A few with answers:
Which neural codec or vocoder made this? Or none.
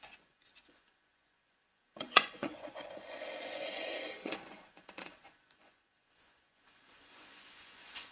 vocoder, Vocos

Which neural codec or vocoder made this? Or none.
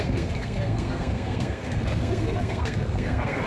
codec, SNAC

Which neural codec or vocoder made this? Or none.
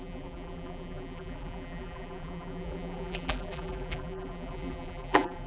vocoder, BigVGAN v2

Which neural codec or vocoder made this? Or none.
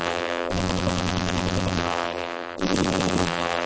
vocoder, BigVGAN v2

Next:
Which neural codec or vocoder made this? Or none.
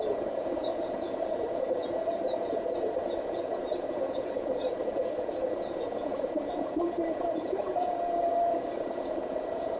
vocoder, Vocos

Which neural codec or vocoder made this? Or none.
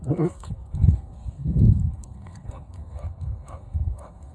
codec, SNAC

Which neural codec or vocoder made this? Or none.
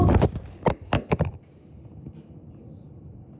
vocoder, BigVGAN v2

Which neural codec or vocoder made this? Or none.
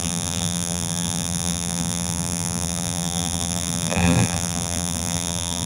vocoder, BigVGAN v2